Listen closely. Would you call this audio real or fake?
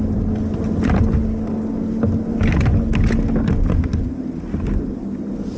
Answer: real